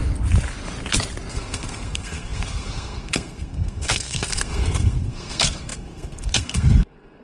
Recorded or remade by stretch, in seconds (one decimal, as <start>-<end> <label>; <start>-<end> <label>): 0.0-1.3 recorded; 1.3-7.2 remade

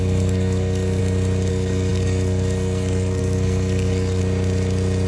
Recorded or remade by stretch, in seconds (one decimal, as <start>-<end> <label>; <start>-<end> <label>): 0.0-1.0 remade; 1.0-1.5 recorded; 1.5-4.2 remade; 4.2-5.1 recorded